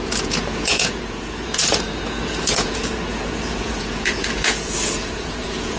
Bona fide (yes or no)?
no